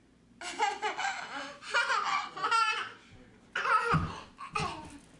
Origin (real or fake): real